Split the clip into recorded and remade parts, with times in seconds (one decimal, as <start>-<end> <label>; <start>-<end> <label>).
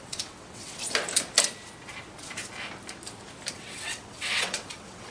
0.0-0.8 remade; 0.8-3.5 recorded; 3.5-5.1 remade